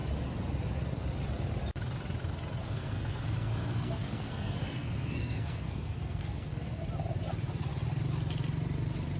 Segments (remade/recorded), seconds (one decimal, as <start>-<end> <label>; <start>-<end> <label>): 0.0-2.6 recorded; 2.6-6.8 remade; 6.8-9.2 recorded